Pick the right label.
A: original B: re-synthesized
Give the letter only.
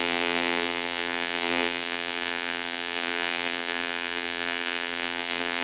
B